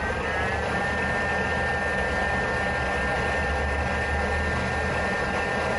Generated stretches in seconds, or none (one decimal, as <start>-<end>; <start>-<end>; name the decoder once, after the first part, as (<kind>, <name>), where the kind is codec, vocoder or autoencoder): none

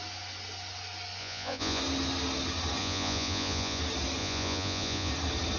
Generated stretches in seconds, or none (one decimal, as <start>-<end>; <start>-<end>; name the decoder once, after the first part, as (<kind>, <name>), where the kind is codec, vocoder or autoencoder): 1.2-1.8 (vocoder, Vocos); 2.8-3.8; 4.2-5.1

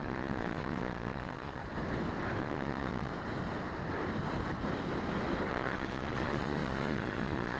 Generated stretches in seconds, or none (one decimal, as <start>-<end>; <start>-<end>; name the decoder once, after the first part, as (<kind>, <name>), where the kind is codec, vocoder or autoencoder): 0.0-1.6 (vocoder, Vocos); 2.4-3.1; 5.5-7.6

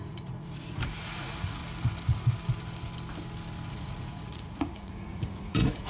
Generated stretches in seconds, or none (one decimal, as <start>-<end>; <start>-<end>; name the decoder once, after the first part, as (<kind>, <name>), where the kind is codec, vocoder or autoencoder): 0.0-1.6 (vocoder, Vocos); 3.7-5.9

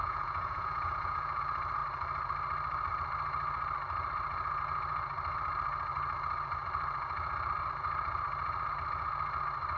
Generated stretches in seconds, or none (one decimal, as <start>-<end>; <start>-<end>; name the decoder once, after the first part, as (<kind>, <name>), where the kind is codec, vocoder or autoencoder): 0.0-1.4 (vocoder, Vocos)

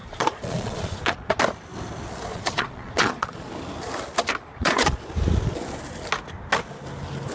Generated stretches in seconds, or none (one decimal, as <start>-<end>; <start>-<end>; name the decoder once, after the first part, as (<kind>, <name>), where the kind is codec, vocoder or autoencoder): 0.0-1.4 (vocoder, Vocos); 2.3-3.5; 4.5-5.0